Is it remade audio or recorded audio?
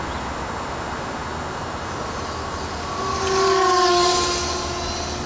recorded